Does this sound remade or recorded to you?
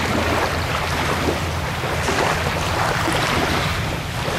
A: recorded